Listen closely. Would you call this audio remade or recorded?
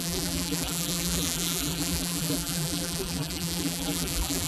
remade